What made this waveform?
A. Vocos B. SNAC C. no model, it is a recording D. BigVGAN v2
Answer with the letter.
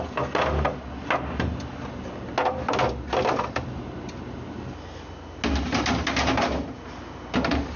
C